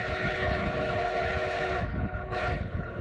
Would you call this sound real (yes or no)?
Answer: no